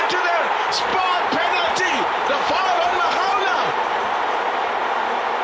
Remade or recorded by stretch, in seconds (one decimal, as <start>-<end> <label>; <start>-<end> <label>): 0.0-0.9 recorded; 0.9-4.1 remade; 4.1-5.4 recorded